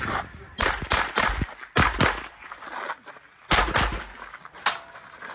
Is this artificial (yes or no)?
no